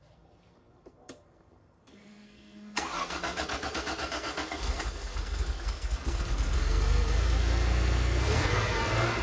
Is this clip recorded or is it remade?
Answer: remade